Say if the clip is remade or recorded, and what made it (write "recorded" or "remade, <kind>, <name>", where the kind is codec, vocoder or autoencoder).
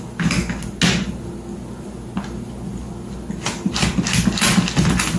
recorded